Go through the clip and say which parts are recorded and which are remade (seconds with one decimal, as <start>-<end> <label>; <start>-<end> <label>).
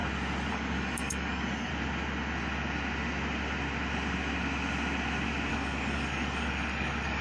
0.0-0.5 recorded; 0.5-1.7 remade; 1.7-5.5 recorded; 5.5-7.2 remade